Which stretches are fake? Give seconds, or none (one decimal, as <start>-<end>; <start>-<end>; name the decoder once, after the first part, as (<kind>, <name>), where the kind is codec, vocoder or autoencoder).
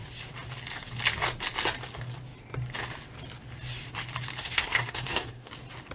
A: 4.4-5.5 (codec, SNAC)